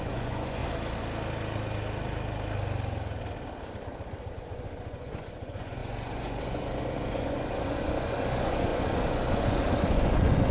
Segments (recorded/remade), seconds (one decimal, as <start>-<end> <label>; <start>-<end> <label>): 0.0-0.6 remade; 0.6-4.3 recorded; 4.3-10.5 remade